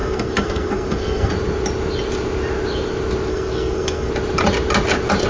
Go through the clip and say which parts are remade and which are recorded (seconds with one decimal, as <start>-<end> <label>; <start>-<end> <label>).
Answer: 0.0-1.3 remade; 1.3-3.3 recorded; 3.3-4.1 remade; 4.1-5.3 recorded